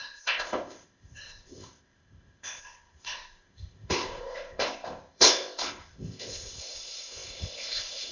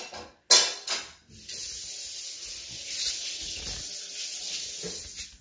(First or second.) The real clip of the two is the second